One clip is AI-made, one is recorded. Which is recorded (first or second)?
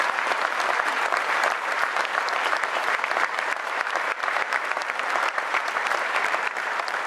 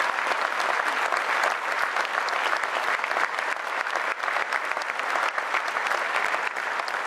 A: second